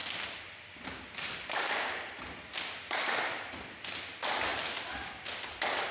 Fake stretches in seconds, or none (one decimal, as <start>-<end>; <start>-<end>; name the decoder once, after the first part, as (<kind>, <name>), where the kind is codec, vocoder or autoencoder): none